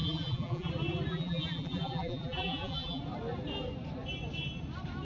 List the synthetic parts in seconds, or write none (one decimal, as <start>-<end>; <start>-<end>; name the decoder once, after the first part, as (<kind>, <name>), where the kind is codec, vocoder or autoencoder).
0.0-0.7 (vocoder, BigVGAN v2); 1.1-3.0